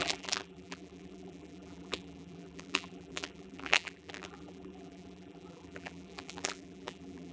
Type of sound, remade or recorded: remade